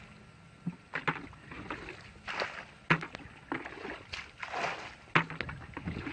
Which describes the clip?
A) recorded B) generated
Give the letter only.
A